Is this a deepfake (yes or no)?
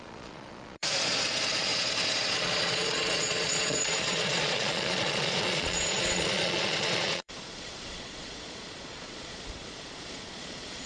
yes